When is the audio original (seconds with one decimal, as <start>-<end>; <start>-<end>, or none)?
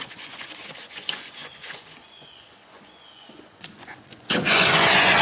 none